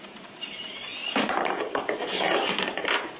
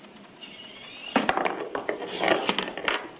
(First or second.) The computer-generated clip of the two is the first